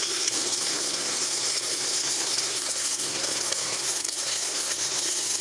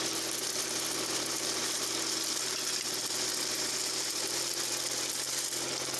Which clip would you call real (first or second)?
second